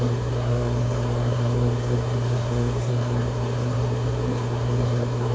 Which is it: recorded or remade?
remade